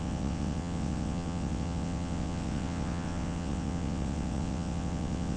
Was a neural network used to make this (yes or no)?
yes